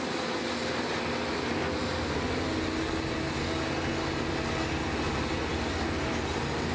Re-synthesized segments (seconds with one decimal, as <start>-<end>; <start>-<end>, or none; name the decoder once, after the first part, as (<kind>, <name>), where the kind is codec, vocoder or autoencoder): none